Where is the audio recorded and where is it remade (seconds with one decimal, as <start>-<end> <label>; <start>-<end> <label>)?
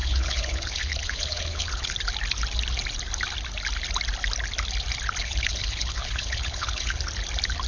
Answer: 0.0-1.9 remade; 1.9-5.2 recorded; 5.2-7.0 remade; 7.0-7.7 recorded